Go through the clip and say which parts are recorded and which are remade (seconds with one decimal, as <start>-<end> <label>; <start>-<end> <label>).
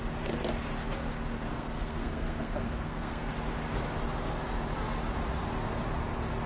0.0-1.5 recorded; 1.5-3.3 remade; 3.3-6.5 recorded